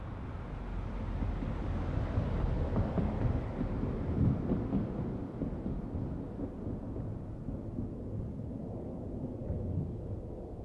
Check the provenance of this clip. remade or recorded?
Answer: recorded